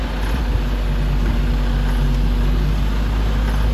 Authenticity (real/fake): real